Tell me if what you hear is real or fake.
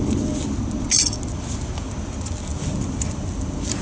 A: real